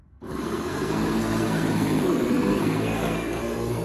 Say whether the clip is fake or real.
fake